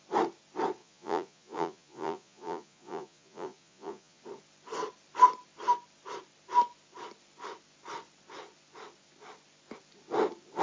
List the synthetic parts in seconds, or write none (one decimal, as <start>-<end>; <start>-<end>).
0.8-4.2